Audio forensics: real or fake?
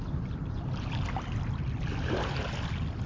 real